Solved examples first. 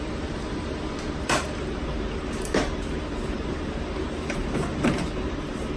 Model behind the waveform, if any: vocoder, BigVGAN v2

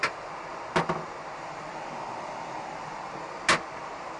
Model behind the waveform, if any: none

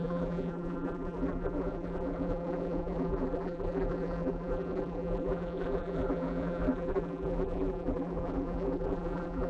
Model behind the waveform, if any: vocoder, BigVGAN v2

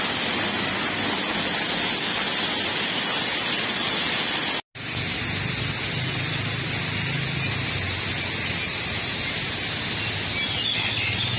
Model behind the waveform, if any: none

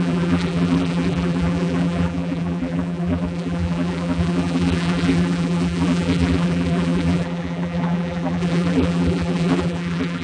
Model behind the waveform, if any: vocoder, BigVGAN v2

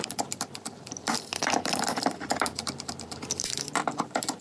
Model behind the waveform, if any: vocoder, BigVGAN v2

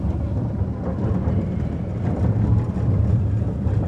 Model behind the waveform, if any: vocoder, BigVGAN v2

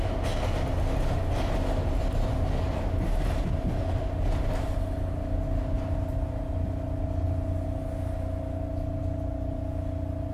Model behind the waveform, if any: none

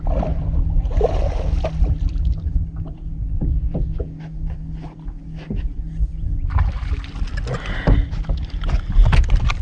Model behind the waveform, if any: none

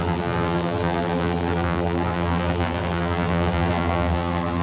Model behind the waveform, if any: vocoder, BigVGAN v2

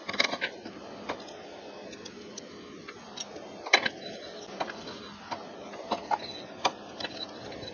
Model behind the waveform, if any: none